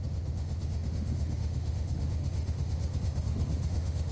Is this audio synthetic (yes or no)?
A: yes